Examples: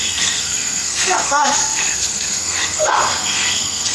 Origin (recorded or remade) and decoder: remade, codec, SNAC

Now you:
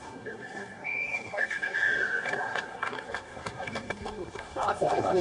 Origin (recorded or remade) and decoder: remade, codec, SNAC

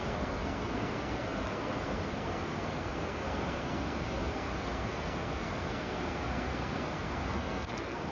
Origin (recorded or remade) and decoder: remade, codec, SNAC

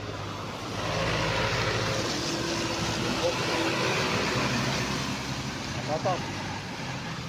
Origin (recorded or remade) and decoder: recorded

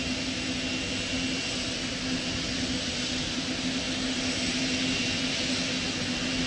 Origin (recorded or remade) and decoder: recorded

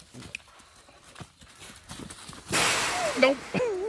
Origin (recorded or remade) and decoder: recorded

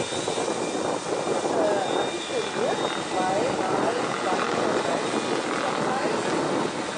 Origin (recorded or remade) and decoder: recorded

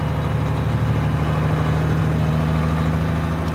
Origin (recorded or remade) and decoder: recorded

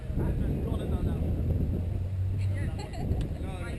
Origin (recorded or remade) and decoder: recorded